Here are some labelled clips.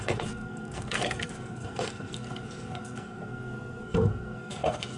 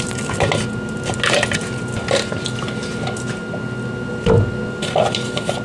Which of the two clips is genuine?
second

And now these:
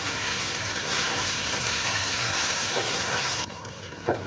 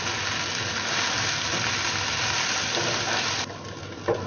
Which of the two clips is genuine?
second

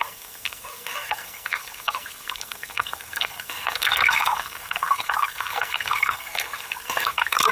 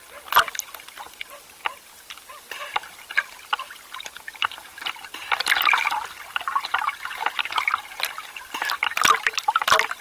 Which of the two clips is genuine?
second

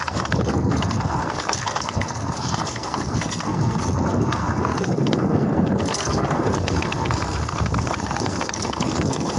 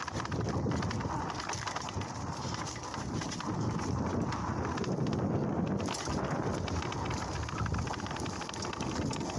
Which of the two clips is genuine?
second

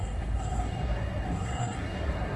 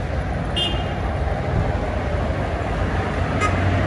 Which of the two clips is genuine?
second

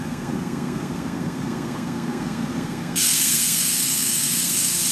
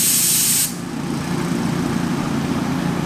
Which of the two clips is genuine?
second